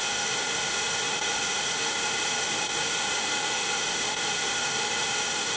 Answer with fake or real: fake